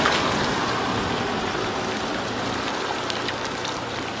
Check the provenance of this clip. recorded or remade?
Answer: recorded